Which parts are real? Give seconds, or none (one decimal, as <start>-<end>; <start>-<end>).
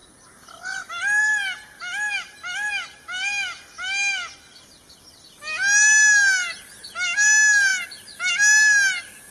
0.0-9.3